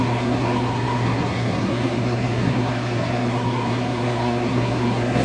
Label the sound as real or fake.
fake